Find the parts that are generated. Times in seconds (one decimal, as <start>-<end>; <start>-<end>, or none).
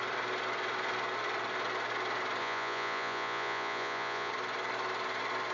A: 2.4-4.3